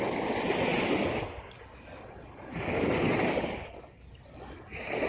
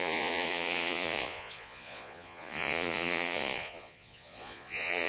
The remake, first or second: second